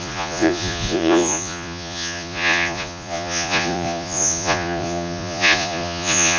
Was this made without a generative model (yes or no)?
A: no